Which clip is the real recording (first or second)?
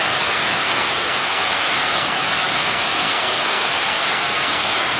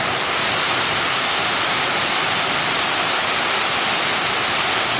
second